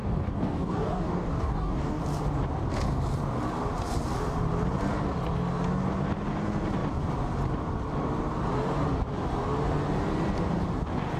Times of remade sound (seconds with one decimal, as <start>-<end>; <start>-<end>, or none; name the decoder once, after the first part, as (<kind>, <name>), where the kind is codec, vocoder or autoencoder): 0.0-2.0 (codec, DAC)